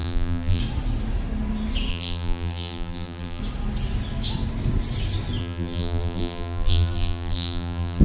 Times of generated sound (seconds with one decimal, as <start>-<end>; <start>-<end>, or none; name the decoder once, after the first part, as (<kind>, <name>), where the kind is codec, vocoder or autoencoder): 0.0-0.6 (vocoder, BigVGAN v2); 1.9-3.4; 5.4-8.0